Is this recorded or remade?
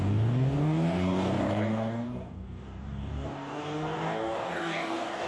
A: remade